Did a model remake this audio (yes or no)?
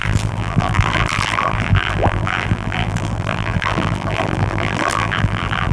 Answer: yes